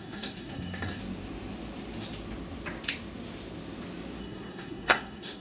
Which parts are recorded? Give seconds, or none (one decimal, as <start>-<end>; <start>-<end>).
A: 1.0-4.2